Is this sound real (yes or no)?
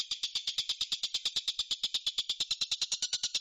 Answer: yes